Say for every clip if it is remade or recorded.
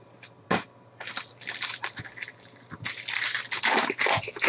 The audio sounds recorded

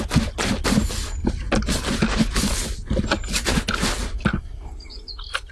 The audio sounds recorded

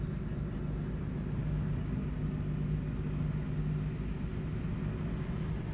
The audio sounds recorded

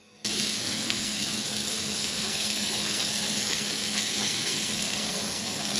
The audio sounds remade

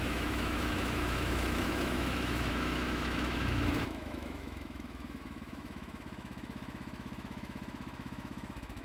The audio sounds remade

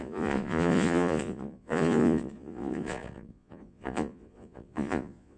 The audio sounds remade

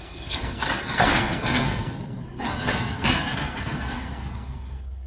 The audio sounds remade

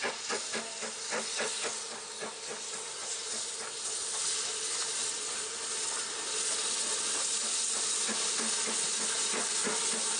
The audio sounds recorded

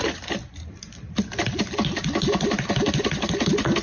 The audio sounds recorded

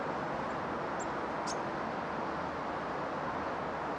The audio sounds recorded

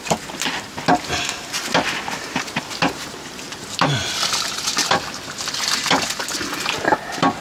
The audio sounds recorded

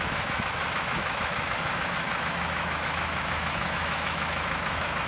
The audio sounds remade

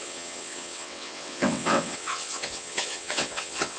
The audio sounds remade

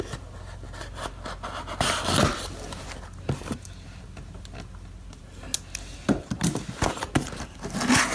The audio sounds recorded